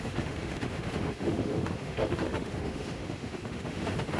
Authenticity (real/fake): fake